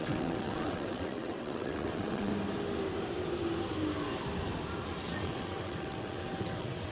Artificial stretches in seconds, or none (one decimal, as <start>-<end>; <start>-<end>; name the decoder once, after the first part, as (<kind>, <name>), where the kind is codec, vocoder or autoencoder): 0.0-2.3 (vocoder, WaveNeXt); 5.0-6.9